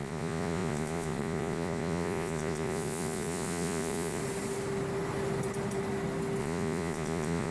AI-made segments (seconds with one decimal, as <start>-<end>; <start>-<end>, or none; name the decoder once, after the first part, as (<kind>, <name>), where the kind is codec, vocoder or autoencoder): 0.0-4.2 (vocoder, Vocos); 6.4-7.5